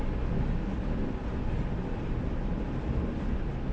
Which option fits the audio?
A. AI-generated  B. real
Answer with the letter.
B